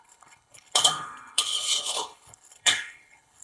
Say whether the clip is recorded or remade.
remade